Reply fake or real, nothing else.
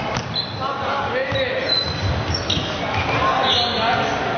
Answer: real